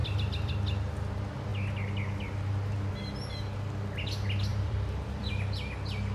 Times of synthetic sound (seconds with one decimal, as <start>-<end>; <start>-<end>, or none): 0.0-0.5; 4.5-5.3